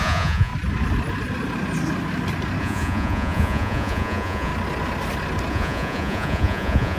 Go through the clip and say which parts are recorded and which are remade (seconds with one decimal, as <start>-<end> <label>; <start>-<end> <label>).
0.0-0.5 remade; 0.5-2.6 recorded; 2.6-4.5 remade; 4.5-5.5 recorded; 5.5-7.0 remade